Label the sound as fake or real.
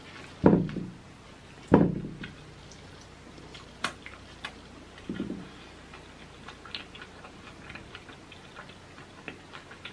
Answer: real